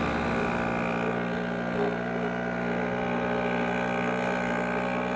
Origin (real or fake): real